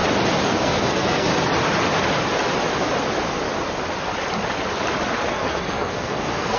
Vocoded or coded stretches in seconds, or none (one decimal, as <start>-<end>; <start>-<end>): 0.5-1.3; 5.3-6.6